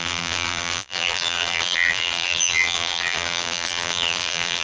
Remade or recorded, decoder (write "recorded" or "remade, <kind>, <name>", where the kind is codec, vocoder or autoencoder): remade, vocoder, BigVGAN v2